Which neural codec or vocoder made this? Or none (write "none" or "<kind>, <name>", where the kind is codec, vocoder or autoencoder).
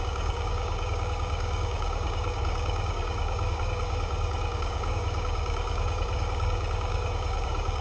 codec, DAC